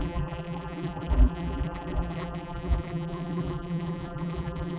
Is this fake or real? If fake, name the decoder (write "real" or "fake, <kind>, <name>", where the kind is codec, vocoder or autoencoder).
fake, vocoder, BigVGAN v2